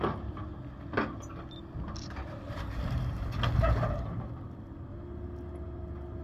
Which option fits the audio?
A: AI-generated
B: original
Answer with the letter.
B